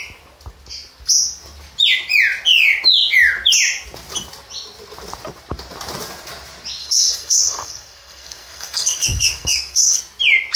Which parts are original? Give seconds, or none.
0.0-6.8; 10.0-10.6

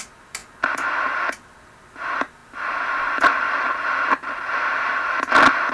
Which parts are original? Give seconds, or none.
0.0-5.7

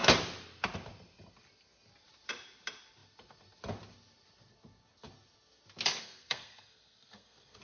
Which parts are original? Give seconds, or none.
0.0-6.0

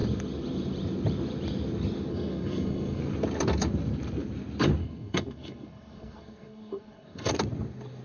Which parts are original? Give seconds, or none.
0.0-2.1; 3.0-4.8; 7.3-8.0

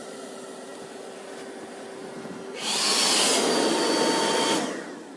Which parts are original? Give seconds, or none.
0.0-5.2